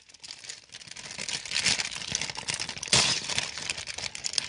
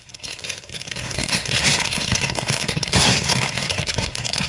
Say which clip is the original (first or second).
first